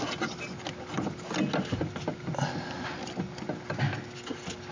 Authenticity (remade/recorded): recorded